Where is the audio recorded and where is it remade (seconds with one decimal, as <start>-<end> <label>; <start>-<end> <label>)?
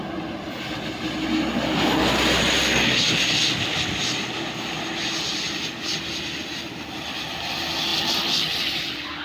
0.0-7.9 recorded; 7.9-8.6 remade; 8.6-9.2 recorded